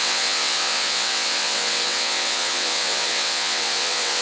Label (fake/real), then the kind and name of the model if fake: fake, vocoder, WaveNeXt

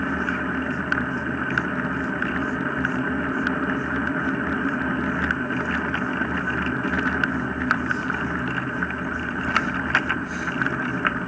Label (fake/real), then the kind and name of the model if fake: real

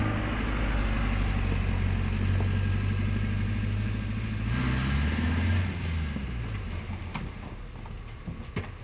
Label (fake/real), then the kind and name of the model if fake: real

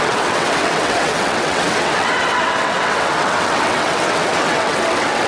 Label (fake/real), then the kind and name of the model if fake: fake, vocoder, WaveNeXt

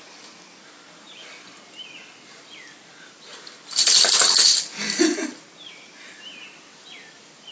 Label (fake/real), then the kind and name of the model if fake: real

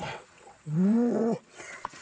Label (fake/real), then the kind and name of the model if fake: fake, vocoder, WaveNeXt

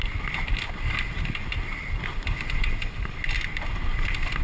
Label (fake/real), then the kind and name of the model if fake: real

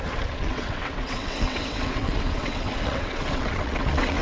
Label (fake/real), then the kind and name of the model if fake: fake, vocoder, WaveNeXt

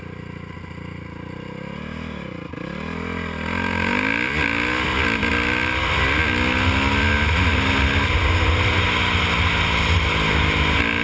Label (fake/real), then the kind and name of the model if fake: real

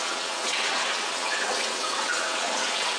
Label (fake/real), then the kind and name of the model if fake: fake, vocoder, WaveNeXt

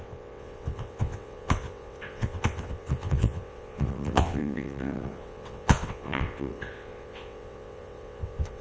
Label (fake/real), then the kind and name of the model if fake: fake, vocoder, WaveNeXt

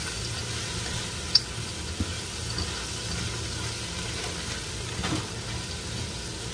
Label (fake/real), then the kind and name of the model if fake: real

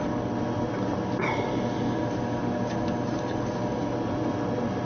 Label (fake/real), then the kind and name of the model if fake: real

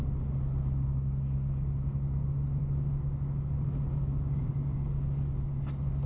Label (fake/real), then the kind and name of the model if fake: real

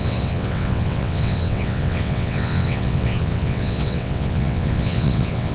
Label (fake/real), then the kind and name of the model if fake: fake, vocoder, WaveNeXt